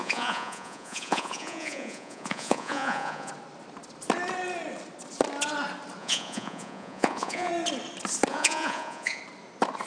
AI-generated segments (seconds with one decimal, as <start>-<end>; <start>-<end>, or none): 0.0-3.3; 6.0-7.5; 8.3-9.2

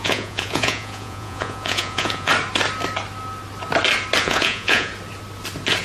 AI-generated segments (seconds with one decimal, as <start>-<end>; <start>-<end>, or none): 0.0-2.3; 4.2-4.9

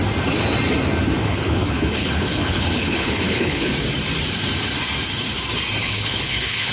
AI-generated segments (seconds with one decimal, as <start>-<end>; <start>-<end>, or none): 1.2-3.7; 5.8-6.7

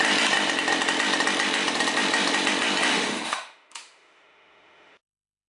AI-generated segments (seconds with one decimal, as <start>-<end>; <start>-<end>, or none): 2.9-5.5

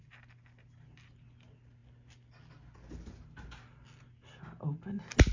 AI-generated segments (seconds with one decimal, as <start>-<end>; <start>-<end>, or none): none

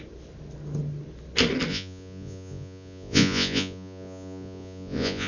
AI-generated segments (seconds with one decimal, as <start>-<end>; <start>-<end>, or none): 1.7-5.3

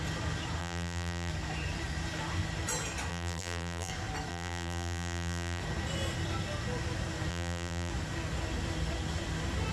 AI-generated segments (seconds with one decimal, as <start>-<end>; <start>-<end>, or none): 0.6-1.3; 3.1-3.9; 4.3-5.6; 7.3-7.9